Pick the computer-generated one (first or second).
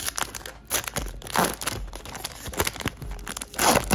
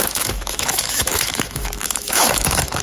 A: second